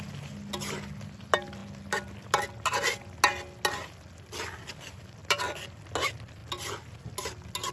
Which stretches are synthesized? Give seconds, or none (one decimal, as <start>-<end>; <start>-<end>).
none